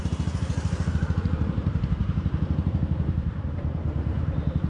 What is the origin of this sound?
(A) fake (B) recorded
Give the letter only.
A